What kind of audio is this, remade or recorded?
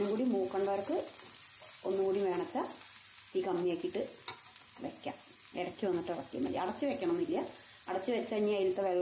recorded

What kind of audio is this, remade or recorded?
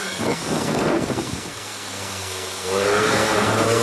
remade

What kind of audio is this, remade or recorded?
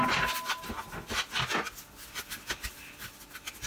recorded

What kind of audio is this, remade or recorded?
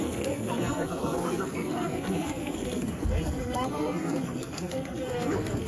remade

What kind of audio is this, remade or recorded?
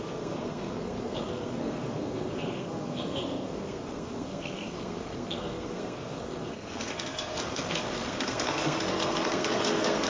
remade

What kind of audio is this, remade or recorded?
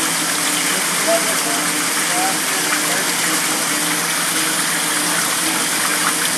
recorded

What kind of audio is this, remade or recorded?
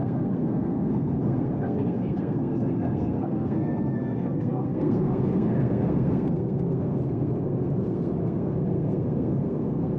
remade